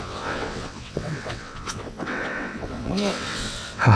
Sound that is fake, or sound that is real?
fake